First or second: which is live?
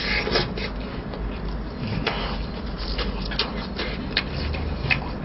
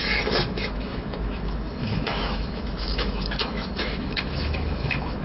first